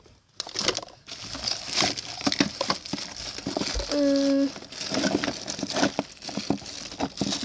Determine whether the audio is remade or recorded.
recorded